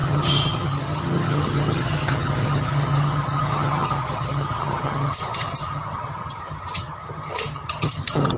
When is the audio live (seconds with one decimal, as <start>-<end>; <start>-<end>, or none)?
none